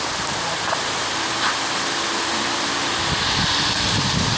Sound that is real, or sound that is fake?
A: real